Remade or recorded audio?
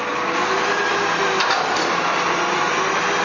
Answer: recorded